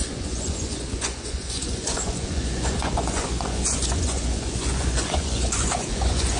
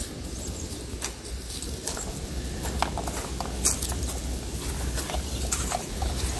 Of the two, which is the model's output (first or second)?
first